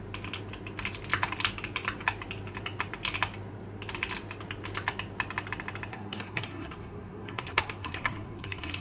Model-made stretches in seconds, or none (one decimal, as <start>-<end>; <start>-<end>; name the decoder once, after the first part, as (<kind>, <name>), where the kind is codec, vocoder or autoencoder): 5.9-8.8 (codec, SNAC)